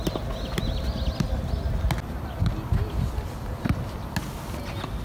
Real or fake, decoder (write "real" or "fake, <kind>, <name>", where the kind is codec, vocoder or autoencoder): real